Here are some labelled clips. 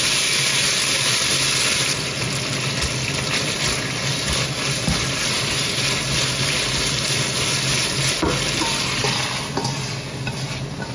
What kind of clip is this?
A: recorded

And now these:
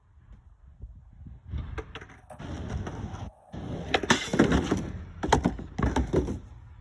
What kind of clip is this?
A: recorded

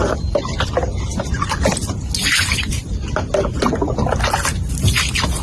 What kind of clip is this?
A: recorded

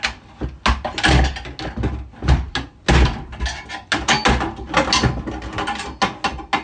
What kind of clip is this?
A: recorded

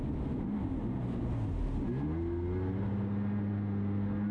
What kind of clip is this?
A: recorded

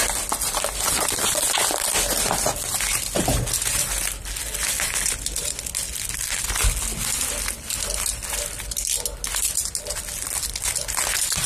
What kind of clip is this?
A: recorded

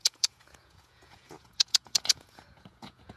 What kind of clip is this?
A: remade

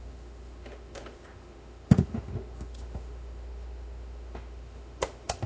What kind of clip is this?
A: remade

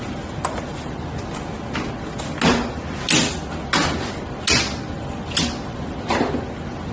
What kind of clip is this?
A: recorded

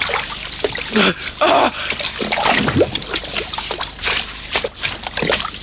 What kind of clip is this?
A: remade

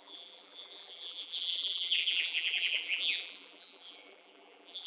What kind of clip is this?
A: remade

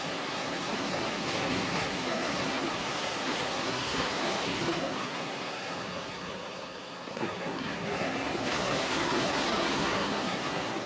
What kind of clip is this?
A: remade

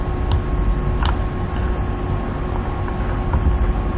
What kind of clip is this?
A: recorded